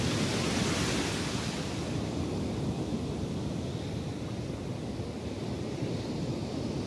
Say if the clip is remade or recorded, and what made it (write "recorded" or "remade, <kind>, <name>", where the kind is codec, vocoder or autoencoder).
recorded